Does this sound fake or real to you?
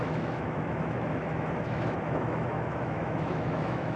fake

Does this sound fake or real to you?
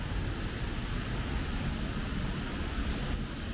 real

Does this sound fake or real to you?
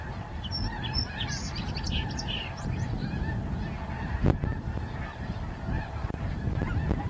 real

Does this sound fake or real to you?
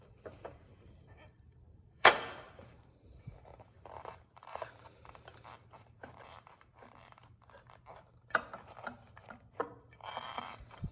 fake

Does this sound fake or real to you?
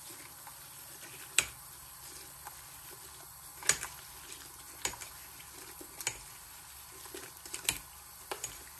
real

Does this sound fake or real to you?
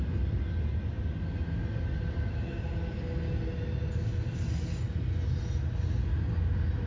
real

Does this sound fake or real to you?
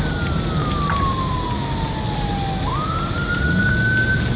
real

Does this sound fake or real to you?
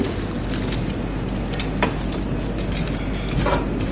real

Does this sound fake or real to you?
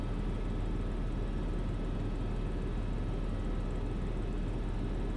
real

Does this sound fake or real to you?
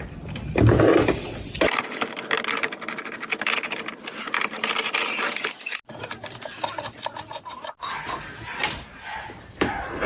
real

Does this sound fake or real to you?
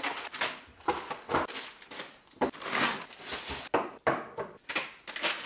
real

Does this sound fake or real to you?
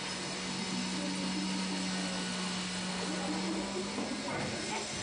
real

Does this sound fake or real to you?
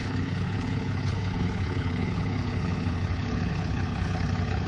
fake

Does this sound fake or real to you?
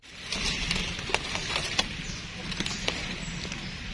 real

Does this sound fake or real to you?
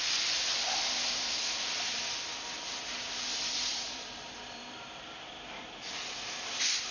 fake